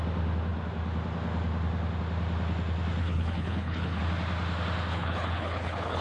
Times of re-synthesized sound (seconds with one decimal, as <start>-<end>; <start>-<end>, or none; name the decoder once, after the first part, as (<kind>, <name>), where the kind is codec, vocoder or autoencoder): 3.0-4.0 (codec, HILCodec); 4.9-6.0